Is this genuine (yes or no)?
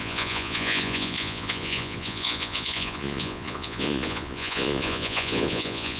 no